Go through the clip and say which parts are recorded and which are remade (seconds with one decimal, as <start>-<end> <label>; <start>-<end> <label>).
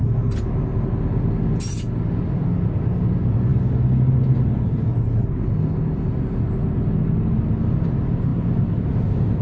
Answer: 0.0-9.4 recorded